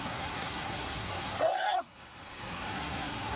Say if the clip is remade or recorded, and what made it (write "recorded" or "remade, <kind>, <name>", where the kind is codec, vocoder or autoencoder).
remade, codec, SNAC